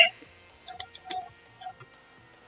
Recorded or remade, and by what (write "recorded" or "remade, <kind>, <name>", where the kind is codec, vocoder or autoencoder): recorded